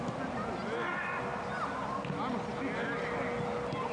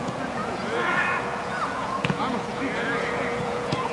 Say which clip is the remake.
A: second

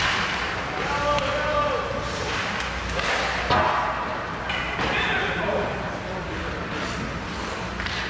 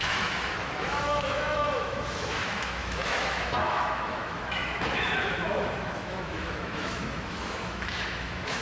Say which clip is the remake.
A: second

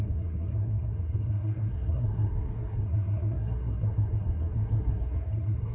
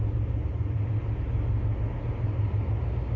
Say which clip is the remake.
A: first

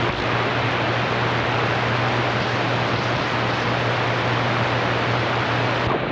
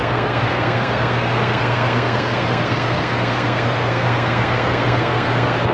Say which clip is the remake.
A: second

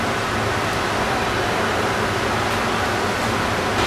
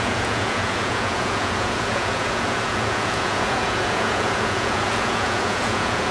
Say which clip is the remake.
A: second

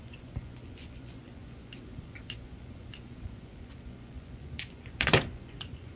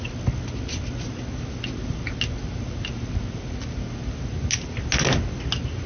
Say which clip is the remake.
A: first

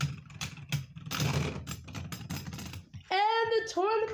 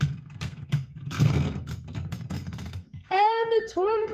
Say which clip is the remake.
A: second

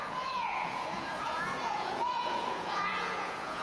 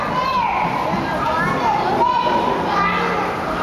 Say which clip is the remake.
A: first